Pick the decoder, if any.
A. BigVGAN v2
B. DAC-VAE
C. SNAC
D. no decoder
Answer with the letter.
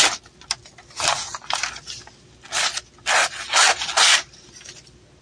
D